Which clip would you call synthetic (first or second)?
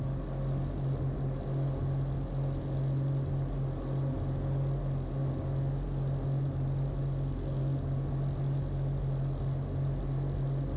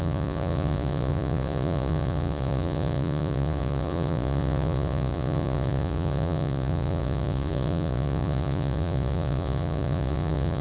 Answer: second